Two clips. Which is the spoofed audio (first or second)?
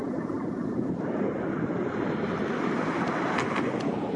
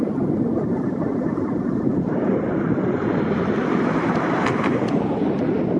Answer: second